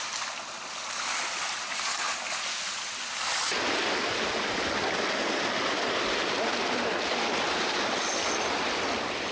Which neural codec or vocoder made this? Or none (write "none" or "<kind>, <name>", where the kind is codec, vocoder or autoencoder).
none